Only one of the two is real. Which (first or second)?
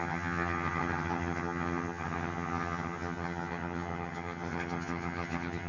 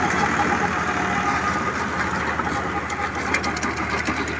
second